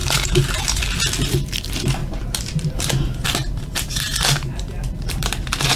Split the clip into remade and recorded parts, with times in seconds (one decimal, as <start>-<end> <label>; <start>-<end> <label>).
0.0-0.8 remade; 0.8-2.0 recorded; 2.0-5.8 remade